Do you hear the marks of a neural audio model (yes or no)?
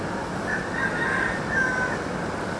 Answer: no